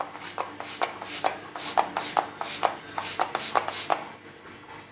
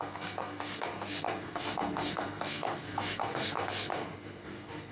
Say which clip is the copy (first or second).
second